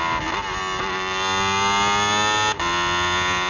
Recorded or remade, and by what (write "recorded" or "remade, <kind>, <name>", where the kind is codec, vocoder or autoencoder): recorded